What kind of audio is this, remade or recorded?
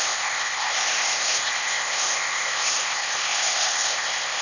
remade